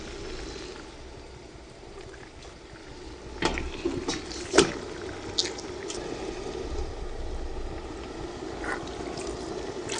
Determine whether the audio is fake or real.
real